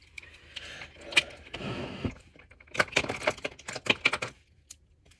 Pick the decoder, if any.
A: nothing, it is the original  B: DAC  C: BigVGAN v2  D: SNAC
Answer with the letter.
A